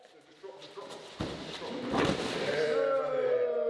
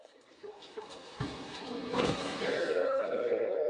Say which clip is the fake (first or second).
second